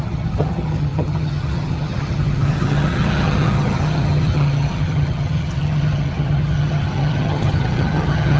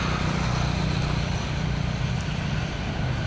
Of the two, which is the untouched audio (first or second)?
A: second